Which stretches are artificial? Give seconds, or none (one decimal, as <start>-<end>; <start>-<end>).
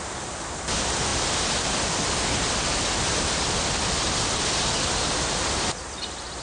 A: none